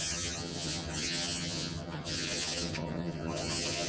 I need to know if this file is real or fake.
fake